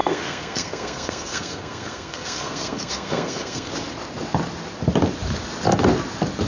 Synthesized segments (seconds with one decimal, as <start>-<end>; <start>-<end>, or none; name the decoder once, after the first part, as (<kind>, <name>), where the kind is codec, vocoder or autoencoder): 0.0-3.7 (codec, SNAC)